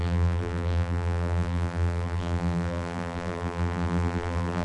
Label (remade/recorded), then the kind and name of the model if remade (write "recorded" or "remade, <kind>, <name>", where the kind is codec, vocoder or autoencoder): remade, vocoder, BigVGAN v2